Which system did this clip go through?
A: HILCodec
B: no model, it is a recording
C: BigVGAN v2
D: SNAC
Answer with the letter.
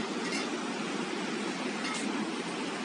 B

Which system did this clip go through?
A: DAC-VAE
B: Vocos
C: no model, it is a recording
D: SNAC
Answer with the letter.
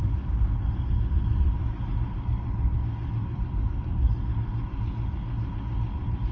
C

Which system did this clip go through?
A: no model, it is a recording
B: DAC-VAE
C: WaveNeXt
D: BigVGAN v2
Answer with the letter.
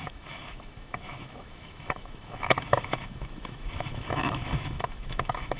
B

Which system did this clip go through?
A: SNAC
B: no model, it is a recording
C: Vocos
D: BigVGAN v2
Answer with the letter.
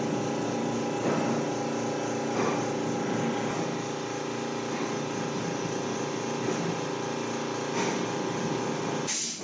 B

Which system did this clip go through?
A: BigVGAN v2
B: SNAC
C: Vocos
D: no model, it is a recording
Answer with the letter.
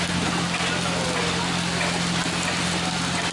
D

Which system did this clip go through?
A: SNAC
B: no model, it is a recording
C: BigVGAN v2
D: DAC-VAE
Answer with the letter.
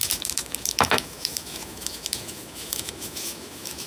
D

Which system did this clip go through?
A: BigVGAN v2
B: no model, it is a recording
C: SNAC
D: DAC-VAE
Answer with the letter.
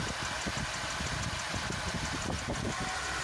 B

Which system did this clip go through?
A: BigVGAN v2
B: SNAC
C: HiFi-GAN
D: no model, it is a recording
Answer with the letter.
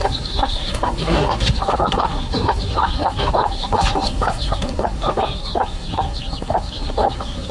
B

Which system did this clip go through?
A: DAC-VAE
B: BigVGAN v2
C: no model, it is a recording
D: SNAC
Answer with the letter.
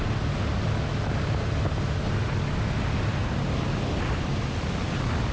C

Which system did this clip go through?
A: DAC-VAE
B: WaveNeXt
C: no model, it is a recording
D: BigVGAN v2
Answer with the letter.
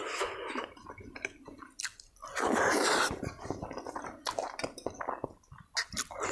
C